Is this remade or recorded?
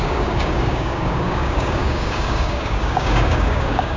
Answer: remade